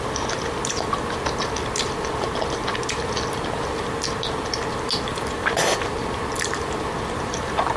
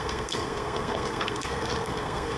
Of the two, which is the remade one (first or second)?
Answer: second